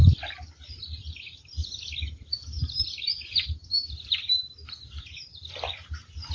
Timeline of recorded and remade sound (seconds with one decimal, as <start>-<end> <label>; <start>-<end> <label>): 0.0-5.3 recorded; 5.3-6.3 remade